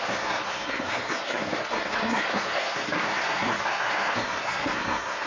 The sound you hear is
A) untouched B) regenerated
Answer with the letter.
B